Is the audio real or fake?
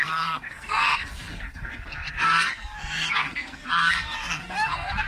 fake